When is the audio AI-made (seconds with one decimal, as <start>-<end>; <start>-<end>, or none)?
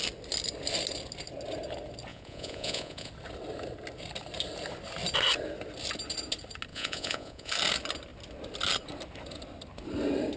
2.1-3.1; 6.7-7.5